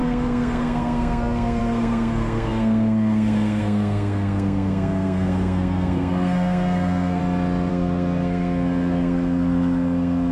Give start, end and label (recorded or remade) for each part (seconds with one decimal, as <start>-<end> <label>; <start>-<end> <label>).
0.0-7.2 remade; 7.2-7.7 recorded; 7.7-10.3 remade